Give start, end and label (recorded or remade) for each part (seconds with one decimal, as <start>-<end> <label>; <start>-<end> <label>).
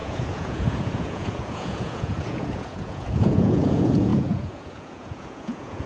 0.0-5.9 remade